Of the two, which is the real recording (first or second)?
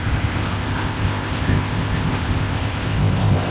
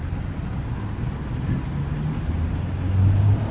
second